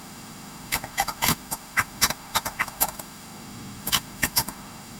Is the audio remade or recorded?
remade